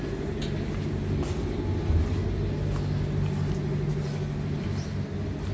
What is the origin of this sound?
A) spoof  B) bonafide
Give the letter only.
B